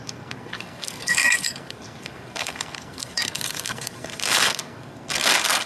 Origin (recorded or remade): remade